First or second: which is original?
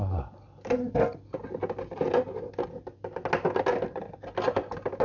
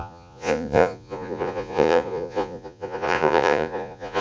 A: first